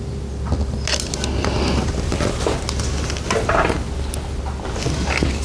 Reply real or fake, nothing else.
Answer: real